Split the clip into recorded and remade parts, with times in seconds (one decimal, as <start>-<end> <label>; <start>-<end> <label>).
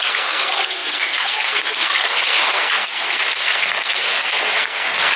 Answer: 0.0-5.2 remade